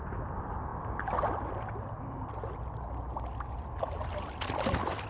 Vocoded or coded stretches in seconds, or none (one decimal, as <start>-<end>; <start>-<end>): none